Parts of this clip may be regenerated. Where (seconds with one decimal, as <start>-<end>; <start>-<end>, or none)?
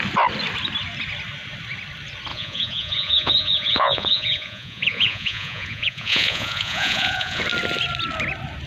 2.3-7.4